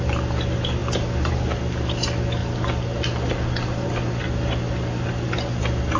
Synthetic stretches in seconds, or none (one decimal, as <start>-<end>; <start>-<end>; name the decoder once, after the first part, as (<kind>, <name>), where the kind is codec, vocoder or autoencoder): none

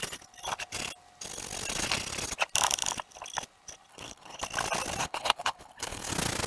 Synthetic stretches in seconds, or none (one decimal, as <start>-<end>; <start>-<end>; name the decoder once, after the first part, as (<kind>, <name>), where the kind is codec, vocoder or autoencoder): 3.9-4.4 (codec, HILCodec); 5.0-6.1

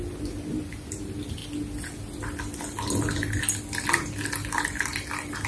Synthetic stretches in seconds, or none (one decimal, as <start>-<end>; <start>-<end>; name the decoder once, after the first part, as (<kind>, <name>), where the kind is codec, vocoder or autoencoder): none

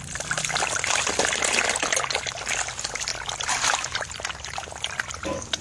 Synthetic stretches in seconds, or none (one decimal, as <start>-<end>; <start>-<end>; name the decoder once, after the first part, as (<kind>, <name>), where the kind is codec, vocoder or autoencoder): none

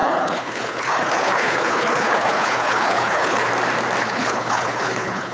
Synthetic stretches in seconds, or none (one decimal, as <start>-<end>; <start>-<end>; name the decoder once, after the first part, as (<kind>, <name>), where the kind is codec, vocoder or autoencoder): 0.0-3.5 (codec, HILCodec); 4.0-5.3

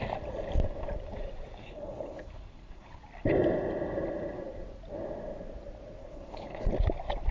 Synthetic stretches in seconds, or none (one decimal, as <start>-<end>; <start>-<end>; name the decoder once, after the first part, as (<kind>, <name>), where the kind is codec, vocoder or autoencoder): 1.6-3.0 (codec, HILCodec); 6.0-6.6

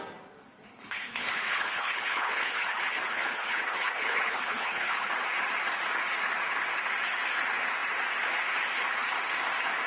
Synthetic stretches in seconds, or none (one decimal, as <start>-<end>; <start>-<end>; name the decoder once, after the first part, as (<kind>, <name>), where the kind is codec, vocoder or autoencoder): 0.7-5.1 (codec, HILCodec)

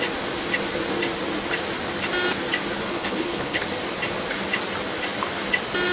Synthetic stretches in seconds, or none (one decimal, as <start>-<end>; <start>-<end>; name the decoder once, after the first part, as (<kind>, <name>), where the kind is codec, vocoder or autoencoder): 2.8-3.6 (codec, HILCodec)